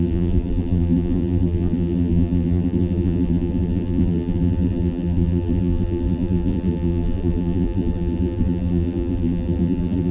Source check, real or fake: fake